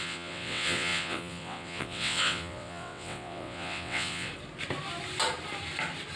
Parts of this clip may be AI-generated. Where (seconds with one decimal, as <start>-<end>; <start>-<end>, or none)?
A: 0.0-4.3